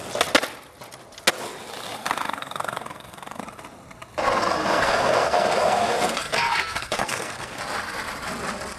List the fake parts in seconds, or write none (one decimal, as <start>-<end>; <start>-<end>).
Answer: 2.0-3.4; 4.6-7.6

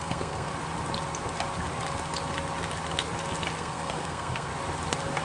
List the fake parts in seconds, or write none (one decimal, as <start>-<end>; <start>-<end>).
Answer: 0.0-0.5; 3.6-4.5

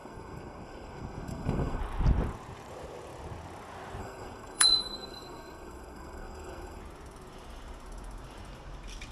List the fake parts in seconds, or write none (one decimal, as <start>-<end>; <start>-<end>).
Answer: 0.0-1.8; 4.0-6.8

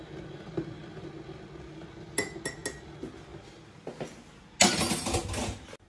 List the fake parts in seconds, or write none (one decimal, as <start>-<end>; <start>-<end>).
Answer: none

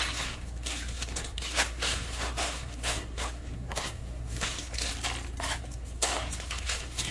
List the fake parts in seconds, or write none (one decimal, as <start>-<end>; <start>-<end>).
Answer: 0.0-4.9; 5.6-7.1